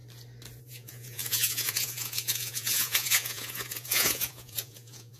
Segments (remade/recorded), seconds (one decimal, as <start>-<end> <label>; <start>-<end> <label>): 0.0-0.6 recorded; 0.6-5.2 remade